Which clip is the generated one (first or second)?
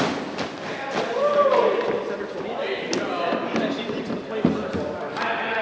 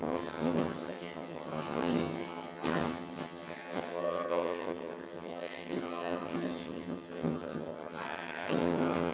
second